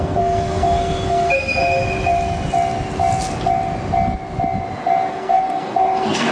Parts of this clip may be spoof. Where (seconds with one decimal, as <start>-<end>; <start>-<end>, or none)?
0.0-1.6; 5.1-6.3